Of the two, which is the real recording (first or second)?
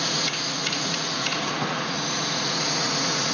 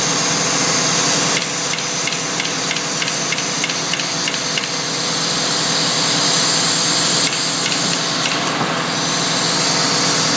second